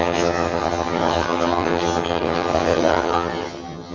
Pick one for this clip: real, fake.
fake